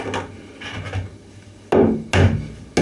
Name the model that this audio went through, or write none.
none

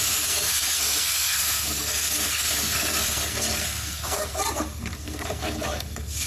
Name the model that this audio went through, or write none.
codec, SNAC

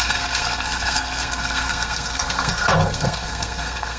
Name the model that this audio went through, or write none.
codec, SNAC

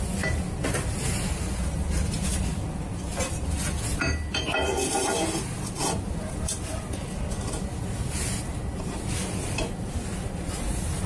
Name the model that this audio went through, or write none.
none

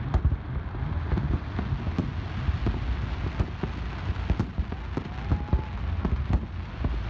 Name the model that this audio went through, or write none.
none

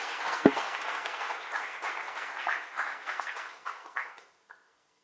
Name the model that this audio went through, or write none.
codec, SNAC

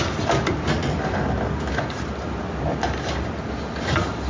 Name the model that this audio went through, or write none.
none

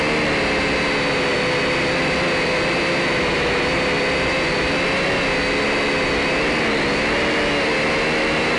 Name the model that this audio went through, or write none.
none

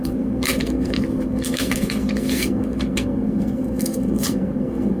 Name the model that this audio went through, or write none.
codec, SNAC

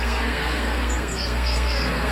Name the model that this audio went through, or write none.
codec, SNAC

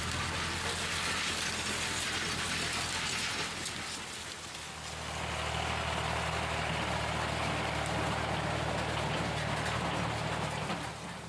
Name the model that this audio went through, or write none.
none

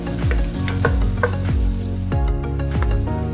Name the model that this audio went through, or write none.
none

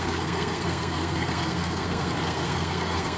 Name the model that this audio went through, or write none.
codec, SNAC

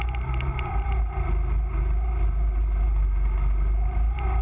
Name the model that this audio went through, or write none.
none